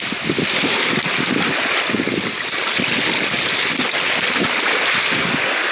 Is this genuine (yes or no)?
yes